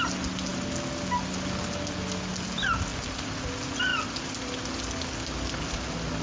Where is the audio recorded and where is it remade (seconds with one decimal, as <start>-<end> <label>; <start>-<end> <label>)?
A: 0.0-2.9 recorded; 2.9-3.5 remade; 3.5-6.2 recorded